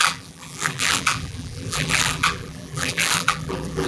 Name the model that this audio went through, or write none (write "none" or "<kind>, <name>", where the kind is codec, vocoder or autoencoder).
vocoder, BigVGAN v2